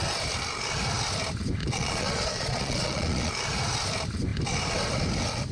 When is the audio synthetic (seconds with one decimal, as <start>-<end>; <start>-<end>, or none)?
1.6-3.3